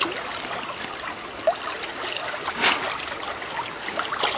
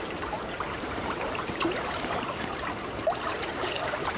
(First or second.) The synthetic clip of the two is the second